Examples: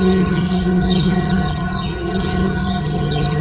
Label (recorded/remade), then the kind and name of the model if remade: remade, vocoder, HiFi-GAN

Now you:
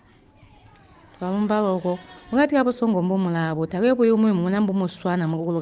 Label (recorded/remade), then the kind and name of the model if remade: recorded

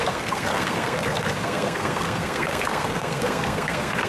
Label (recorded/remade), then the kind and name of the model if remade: remade, codec, SNAC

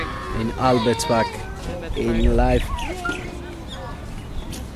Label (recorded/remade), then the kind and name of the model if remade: recorded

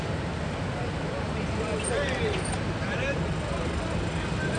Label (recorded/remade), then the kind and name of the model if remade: recorded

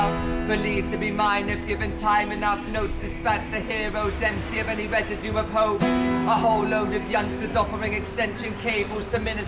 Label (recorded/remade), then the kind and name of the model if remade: recorded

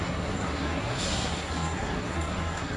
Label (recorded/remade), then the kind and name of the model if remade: remade, codec, SNAC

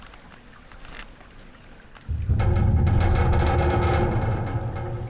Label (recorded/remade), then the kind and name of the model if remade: recorded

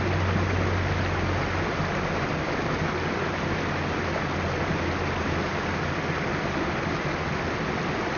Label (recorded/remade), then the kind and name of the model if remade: recorded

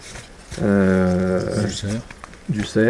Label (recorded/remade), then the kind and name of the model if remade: remade, vocoder, Vocos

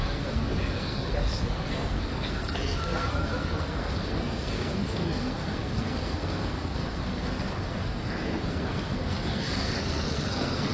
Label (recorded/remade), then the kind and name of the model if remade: remade, codec, SNAC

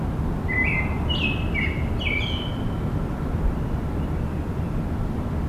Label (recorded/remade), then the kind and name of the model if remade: recorded